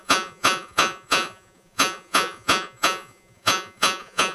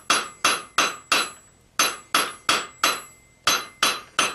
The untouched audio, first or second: second